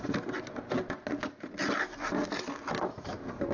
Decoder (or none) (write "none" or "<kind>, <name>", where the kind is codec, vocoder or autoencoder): none